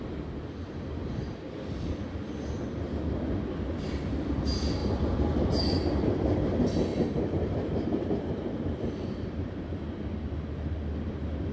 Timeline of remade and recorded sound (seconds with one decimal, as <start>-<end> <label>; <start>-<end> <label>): 0.0-6.9 recorded; 6.9-9.7 remade; 9.7-11.5 recorded